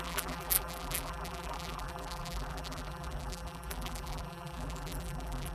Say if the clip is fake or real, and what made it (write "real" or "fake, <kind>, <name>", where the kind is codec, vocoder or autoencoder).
fake, vocoder, BigVGAN v2